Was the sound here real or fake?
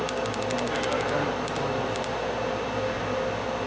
real